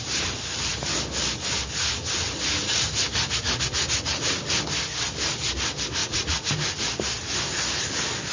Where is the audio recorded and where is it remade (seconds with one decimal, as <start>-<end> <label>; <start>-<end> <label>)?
0.0-6.0 recorded; 6.0-6.5 remade; 6.5-8.3 recorded